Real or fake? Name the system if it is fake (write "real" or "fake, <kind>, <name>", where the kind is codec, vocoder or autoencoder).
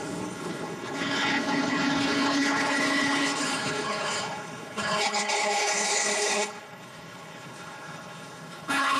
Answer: fake, codec, HILCodec